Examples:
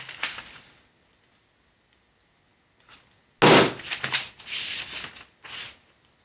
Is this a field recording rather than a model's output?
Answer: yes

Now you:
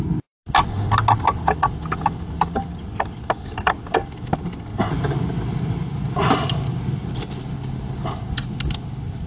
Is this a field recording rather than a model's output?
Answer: yes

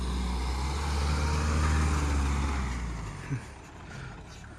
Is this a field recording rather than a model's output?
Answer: yes